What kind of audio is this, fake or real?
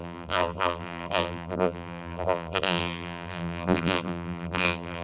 fake